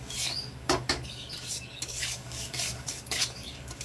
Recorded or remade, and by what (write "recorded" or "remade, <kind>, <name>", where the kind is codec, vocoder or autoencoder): remade, codec, DAC